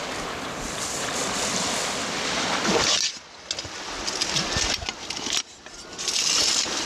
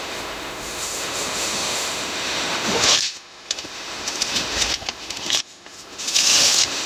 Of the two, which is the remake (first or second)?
second